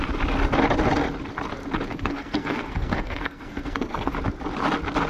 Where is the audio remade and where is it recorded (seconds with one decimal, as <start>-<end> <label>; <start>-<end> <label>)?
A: 0.0-1.9 recorded; 1.9-4.1 remade; 4.1-5.1 recorded